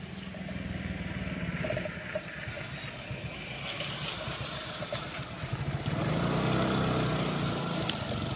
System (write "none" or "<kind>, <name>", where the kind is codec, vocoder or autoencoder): none